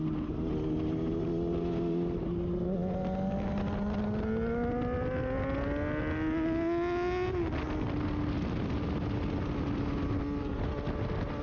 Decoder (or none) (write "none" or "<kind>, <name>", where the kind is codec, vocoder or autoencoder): none